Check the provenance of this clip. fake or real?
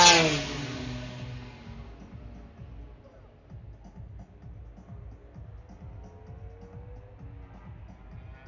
real